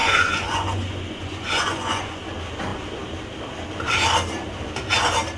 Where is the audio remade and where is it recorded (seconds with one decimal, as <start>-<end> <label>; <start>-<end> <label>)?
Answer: 0.0-2.2 remade; 2.2-5.4 recorded